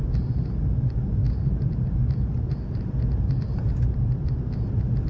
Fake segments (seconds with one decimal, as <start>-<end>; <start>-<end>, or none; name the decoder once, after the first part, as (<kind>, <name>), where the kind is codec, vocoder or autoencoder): 1.2-4.3 (vocoder, BigVGAN v2)